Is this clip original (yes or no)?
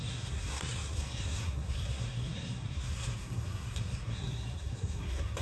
no